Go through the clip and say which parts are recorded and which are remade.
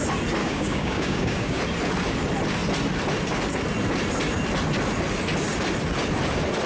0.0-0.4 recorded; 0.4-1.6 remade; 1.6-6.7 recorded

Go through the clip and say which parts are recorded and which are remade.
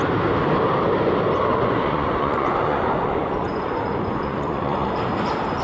0.0-1.5 recorded; 1.5-4.9 remade; 4.9-5.6 recorded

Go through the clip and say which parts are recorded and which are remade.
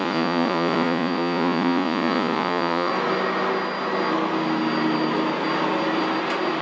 0.0-2.9 remade; 2.9-6.6 recorded